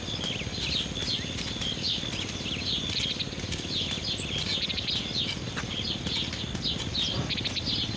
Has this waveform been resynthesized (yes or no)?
no